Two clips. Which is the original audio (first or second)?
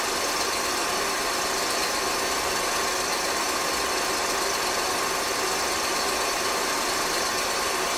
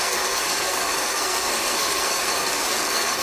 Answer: first